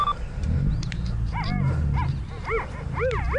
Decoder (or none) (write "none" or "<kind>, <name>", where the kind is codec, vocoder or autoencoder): none